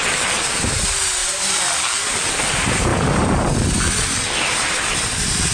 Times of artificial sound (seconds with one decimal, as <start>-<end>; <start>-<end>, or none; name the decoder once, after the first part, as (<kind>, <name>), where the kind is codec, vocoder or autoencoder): 0.0-5.5 (vocoder, BigVGAN v2)